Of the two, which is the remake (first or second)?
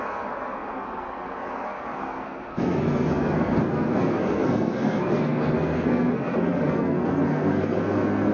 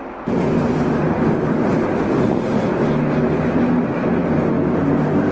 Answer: first